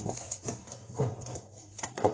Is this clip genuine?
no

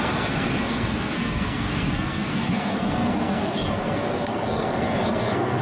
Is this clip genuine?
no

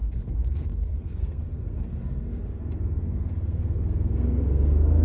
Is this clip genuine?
no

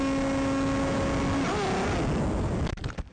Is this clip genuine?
yes